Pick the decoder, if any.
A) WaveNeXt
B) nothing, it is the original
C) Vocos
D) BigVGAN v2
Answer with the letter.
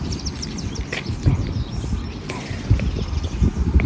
B